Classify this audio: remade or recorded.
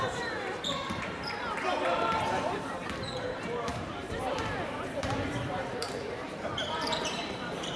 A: remade